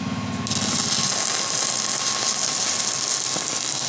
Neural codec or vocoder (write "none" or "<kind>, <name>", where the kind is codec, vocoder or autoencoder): none